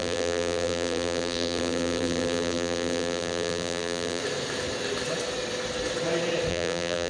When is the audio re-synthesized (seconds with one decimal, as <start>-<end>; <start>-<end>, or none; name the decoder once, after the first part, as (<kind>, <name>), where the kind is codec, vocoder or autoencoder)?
0.0-4.2 (vocoder, BigVGAN v2); 6.5-7.1